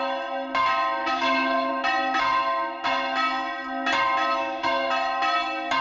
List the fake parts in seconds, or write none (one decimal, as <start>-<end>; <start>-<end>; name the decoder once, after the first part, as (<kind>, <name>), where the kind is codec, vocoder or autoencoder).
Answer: 1.0-1.7 (codec, DAC); 4.4-4.9